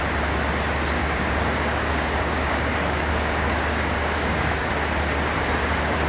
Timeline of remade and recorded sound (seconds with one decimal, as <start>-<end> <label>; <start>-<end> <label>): 0.0-1.0 recorded; 1.0-4.7 remade; 4.7-6.1 recorded